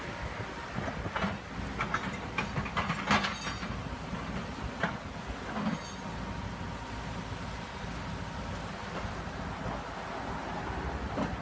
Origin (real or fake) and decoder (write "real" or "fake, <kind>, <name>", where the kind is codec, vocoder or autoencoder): real